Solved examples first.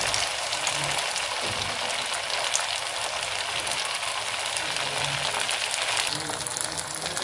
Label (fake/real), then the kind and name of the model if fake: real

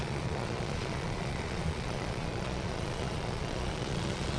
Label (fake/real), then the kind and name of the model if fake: fake, vocoder, Vocos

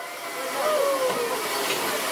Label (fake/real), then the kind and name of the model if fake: real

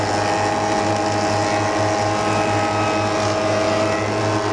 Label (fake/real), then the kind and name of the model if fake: real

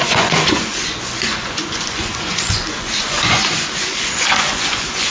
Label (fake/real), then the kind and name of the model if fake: fake, vocoder, Vocos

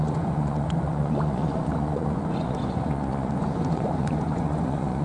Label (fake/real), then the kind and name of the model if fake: fake, vocoder, Vocos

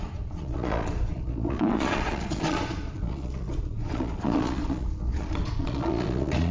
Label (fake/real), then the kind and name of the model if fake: fake, vocoder, Vocos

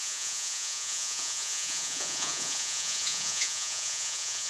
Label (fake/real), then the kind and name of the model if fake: fake, vocoder, Vocos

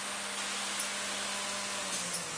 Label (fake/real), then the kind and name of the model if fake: real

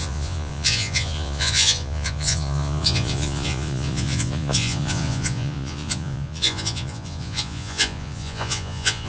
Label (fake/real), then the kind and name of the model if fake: fake, vocoder, Vocos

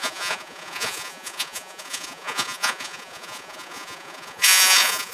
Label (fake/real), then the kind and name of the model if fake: fake, vocoder, Vocos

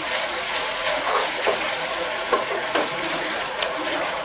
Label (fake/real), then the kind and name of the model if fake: fake, vocoder, Vocos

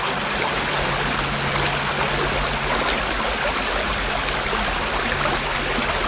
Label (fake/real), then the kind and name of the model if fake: real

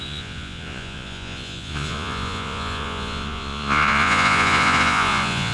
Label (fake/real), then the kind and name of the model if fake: fake, vocoder, Vocos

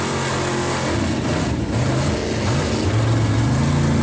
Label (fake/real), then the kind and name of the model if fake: real